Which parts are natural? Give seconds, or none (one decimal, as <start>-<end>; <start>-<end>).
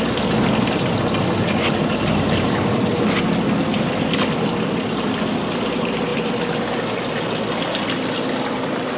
0.0-9.0